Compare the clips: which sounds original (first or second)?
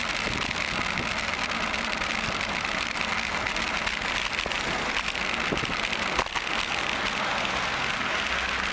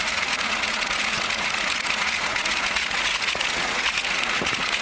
first